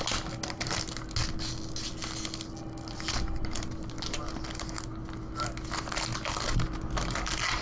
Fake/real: real